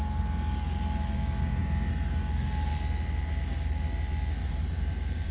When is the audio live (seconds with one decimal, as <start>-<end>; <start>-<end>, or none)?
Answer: 0.0-4.4